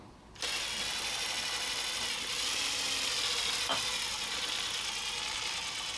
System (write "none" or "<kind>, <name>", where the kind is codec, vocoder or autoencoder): none